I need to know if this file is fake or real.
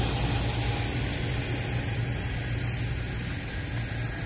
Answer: real